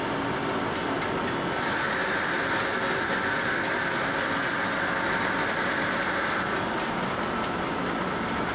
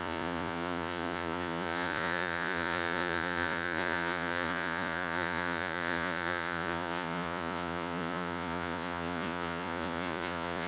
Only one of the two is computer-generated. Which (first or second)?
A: second